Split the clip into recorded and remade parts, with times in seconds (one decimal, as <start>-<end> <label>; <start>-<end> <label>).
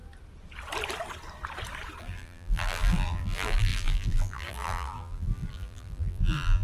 0.0-2.0 recorded; 2.0-6.6 remade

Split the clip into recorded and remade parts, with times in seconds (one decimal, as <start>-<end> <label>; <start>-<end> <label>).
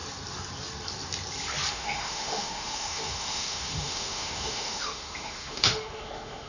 0.0-1.7 recorded; 1.7-6.5 remade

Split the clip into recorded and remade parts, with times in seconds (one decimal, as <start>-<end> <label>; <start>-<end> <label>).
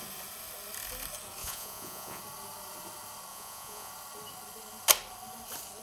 0.0-1.4 recorded; 1.4-2.2 remade; 2.2-3.3 recorded; 3.3-3.9 remade; 3.9-5.8 recorded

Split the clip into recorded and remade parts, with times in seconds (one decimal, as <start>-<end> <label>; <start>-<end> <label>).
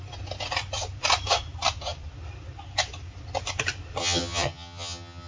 0.0-4.0 recorded; 4.0-5.3 remade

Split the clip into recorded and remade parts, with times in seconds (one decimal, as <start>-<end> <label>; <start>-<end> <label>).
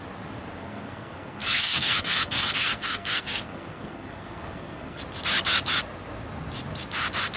0.0-0.6 recorded; 0.6-5.0 remade; 5.0-7.4 recorded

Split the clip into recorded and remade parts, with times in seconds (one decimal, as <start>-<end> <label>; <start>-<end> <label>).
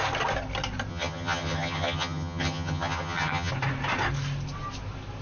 0.0-0.9 recorded; 0.9-3.5 remade; 3.5-5.2 recorded